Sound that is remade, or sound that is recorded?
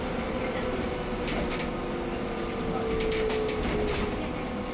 recorded